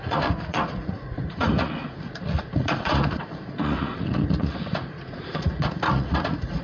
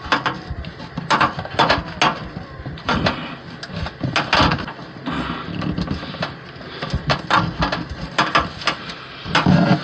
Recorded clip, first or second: second